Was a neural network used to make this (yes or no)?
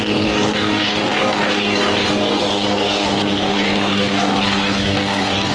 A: yes